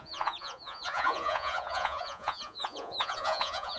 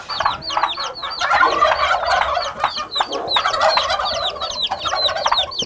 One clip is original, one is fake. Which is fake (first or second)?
first